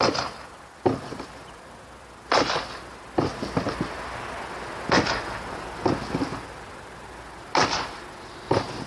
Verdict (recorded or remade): recorded